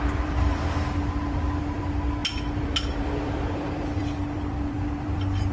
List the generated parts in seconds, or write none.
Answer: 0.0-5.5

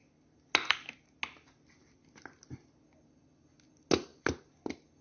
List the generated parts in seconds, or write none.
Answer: none

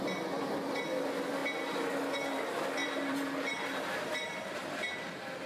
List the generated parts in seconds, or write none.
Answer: 2.8-5.1

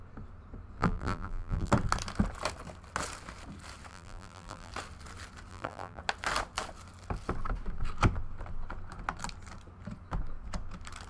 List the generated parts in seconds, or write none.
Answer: 0.8-1.7; 3.9-4.7; 5.5-6.0

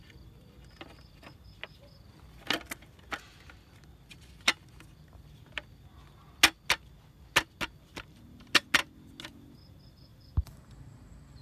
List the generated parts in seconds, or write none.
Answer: 10.1-11.4

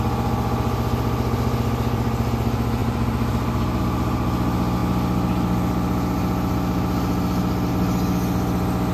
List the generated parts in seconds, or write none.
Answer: 2.8-3.8